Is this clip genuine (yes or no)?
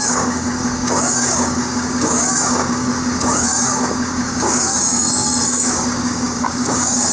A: no